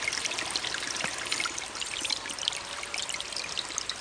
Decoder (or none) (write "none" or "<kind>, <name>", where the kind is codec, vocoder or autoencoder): none